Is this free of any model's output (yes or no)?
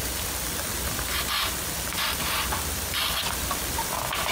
no